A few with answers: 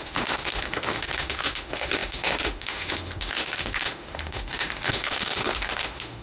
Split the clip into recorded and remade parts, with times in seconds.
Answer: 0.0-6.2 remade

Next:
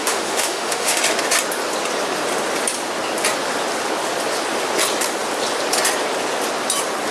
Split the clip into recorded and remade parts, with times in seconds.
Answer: 0.0-1.0 remade; 1.0-7.1 recorded

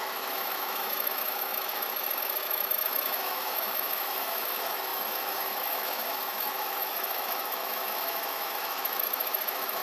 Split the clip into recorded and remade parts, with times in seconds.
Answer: 0.0-9.8 remade

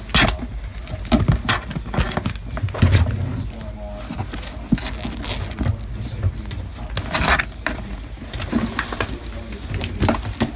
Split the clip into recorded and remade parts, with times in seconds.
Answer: 0.0-10.6 recorded

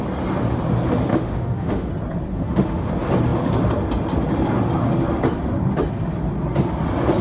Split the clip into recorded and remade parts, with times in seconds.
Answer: 0.0-1.1 recorded; 1.1-1.9 remade; 1.9-2.3 recorded; 2.3-2.9 remade; 2.9-7.2 recorded

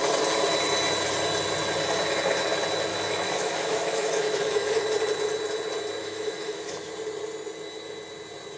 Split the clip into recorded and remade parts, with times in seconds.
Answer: 0.0-2.9 recorded; 2.9-4.8 remade; 4.8-6.0 recorded; 6.0-6.9 remade; 6.9-8.6 recorded

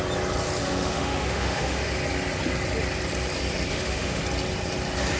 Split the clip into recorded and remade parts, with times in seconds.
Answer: 0.0-0.6 recorded; 0.6-1.9 remade; 1.9-3.7 recorded; 3.7-4.2 remade; 4.2-5.2 recorded

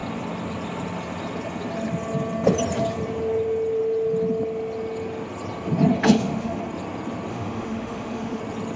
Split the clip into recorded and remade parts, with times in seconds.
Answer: 0.0-6.0 recorded; 6.0-6.6 remade; 6.6-7.3 recorded; 7.3-8.4 remade; 8.4-8.8 recorded